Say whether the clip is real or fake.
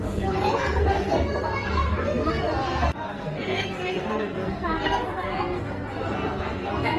fake